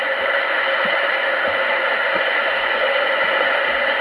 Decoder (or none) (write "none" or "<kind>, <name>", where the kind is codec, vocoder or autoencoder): vocoder, Vocos